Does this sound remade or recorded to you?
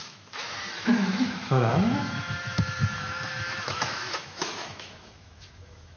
remade